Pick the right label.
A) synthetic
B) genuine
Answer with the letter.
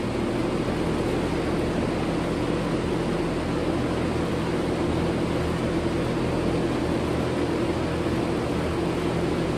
B